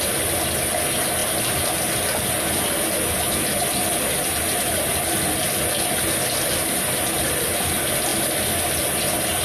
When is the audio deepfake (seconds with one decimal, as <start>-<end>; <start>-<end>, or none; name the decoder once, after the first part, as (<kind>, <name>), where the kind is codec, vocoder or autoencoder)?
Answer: none